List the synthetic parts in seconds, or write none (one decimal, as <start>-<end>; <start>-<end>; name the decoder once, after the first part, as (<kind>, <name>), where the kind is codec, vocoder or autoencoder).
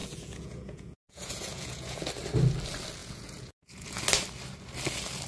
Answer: 0.0-2.1 (vocoder, Vocos); 3.0-4.0